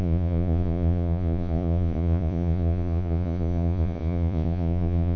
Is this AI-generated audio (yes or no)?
yes